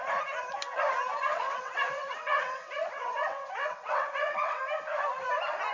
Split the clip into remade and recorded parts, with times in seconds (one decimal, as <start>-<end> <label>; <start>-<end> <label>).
0.0-1.3 recorded; 1.3-4.6 remade; 4.6-5.7 recorded